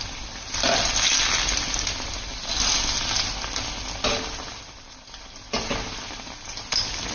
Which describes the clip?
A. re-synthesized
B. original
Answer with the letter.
B